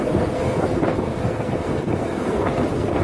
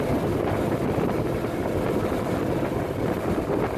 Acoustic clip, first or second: second